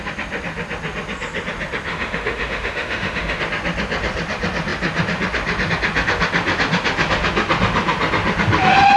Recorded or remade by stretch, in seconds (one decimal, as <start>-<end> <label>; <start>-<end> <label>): 0.0-1.9 recorded; 1.9-3.4 remade; 3.4-9.0 recorded